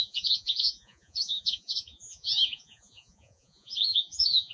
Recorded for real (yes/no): no